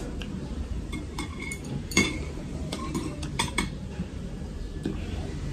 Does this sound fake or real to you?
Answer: fake